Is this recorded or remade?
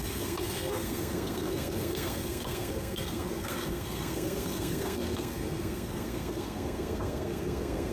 remade